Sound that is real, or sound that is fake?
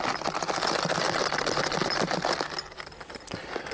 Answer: real